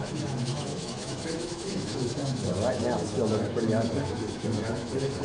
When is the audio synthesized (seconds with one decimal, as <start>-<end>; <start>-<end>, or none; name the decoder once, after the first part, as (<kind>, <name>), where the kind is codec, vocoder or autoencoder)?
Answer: 0.0-5.2 (autoencoder, DAC-VAE)